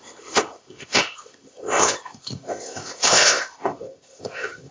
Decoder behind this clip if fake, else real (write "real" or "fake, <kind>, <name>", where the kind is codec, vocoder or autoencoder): fake, codec, ZipCodec